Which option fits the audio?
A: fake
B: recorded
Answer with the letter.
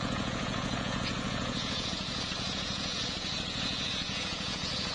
A